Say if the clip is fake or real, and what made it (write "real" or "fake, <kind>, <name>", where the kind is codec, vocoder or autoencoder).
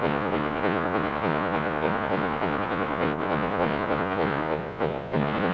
fake, vocoder, Vocos